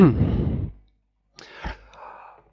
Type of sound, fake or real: real